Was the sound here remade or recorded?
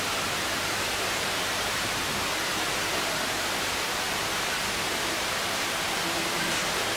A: remade